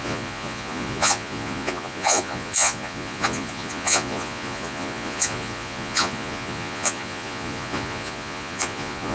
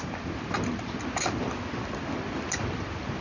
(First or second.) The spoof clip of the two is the first